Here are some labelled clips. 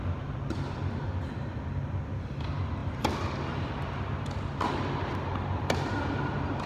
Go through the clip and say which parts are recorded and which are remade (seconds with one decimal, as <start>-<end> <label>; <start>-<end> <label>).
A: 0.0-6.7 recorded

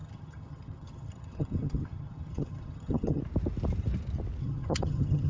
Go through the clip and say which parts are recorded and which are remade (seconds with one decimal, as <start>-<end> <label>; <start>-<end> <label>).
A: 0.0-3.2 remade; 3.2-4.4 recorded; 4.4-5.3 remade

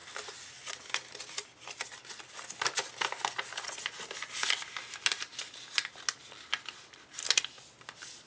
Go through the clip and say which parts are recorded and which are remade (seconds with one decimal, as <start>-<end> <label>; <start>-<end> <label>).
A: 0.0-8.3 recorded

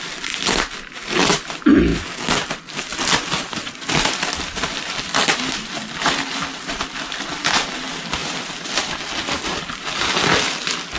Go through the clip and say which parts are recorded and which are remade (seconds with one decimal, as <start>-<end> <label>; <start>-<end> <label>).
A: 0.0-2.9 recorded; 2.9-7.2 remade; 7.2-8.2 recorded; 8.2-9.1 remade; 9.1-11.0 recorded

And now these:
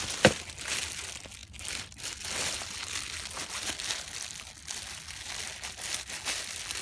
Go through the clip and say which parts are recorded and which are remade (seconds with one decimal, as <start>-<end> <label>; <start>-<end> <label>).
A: 0.0-6.8 recorded